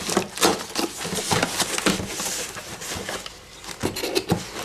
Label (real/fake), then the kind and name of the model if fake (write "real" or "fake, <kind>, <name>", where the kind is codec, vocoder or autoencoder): real